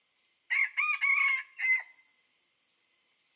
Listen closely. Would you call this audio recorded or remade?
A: recorded